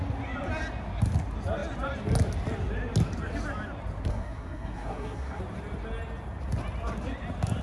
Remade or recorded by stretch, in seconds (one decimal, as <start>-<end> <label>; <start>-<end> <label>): 0.0-4.1 recorded; 4.1-5.4 remade; 5.4-7.6 recorded